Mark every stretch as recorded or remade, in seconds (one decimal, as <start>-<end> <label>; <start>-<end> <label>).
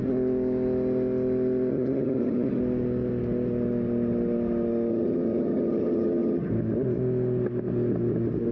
0.0-1.7 recorded; 1.7-2.6 remade; 2.6-4.9 recorded; 4.9-6.5 remade; 6.5-8.5 recorded